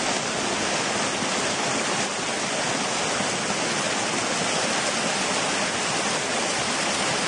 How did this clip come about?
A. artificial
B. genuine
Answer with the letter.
B